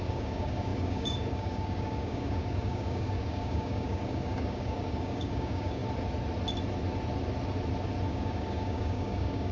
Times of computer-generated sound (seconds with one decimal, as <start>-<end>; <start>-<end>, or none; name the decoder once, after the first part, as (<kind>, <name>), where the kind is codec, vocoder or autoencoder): 0.0-5.8 (codec, DAC); 8.1-9.5